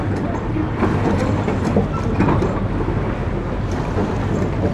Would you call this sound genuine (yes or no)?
yes